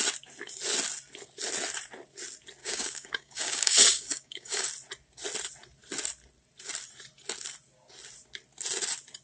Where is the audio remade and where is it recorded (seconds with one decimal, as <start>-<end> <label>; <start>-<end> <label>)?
0.0-2.6 recorded; 2.6-4.7 remade; 4.7-9.2 recorded